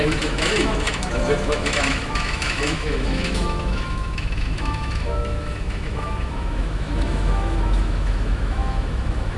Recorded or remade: remade